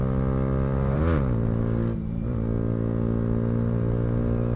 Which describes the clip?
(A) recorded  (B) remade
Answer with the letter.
A